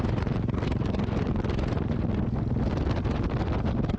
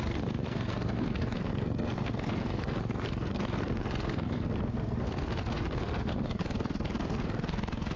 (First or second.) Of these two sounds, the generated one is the second